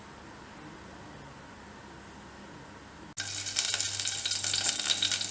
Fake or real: real